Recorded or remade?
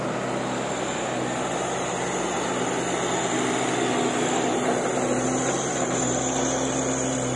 recorded